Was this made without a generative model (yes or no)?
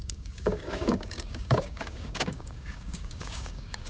no